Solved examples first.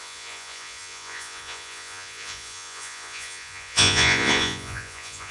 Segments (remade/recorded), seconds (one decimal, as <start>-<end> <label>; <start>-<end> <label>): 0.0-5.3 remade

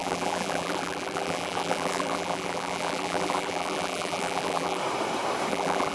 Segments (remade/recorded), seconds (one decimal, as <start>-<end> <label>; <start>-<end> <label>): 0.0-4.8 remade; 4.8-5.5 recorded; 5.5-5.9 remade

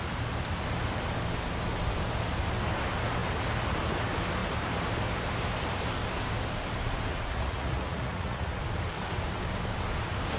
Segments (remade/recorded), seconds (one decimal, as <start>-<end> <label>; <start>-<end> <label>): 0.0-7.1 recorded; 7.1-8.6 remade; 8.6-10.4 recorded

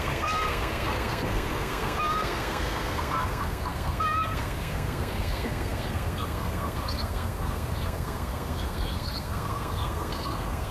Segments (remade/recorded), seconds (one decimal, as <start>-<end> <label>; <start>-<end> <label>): 0.0-10.7 remade